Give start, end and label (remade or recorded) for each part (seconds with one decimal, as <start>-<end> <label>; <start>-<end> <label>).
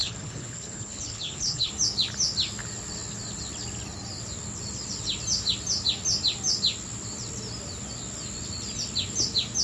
0.0-1.7 remade; 1.7-9.6 recorded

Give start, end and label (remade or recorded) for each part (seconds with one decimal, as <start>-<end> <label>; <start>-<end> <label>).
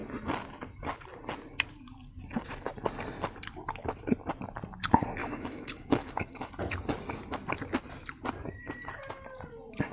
0.0-5.2 recorded; 5.2-6.5 remade; 6.5-9.9 recorded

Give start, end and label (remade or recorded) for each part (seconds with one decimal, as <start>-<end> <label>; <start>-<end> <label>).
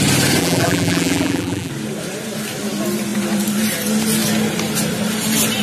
0.0-0.4 recorded; 0.4-1.7 remade; 1.7-5.6 recorded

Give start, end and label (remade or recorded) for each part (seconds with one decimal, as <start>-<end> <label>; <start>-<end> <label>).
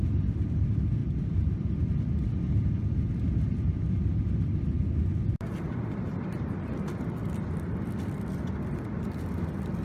0.0-9.8 recorded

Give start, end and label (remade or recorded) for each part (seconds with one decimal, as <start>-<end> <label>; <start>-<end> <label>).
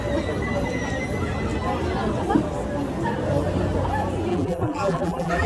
0.0-4.3 recorded; 4.3-5.5 remade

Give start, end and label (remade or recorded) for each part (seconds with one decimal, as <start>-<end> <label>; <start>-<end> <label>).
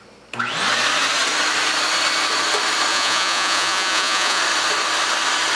0.0-2.9 recorded; 2.9-4.4 remade; 4.4-5.6 recorded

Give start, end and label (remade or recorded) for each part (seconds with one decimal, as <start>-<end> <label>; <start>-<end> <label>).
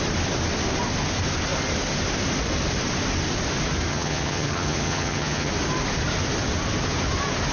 0.0-3.9 recorded; 3.9-5.5 remade; 5.5-7.5 recorded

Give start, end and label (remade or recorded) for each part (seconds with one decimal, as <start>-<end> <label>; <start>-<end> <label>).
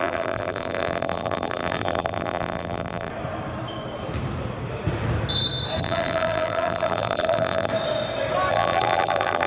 0.0-3.1 remade; 3.1-5.8 recorded; 5.8-7.7 remade; 7.7-8.5 recorded; 8.5-9.5 remade